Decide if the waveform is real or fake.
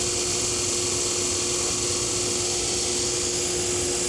real